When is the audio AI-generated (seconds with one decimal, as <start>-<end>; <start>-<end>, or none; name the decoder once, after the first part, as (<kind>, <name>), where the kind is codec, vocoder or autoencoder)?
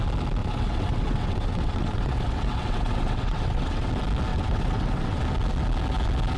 0.4-3.9 (vocoder, WaveNeXt); 4.3-5.2